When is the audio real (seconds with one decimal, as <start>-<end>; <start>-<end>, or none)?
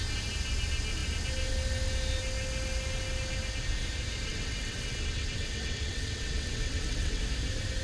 0.0-4.3; 7.2-7.8